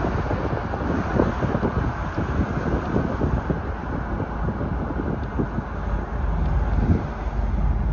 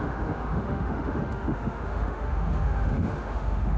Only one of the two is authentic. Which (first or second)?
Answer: first